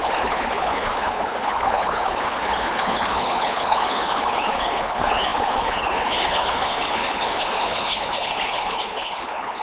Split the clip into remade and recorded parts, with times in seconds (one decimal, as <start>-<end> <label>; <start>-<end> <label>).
0.0-9.6 remade